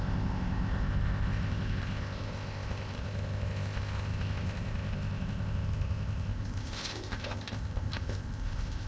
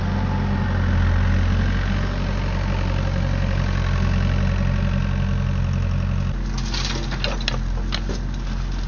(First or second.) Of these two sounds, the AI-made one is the first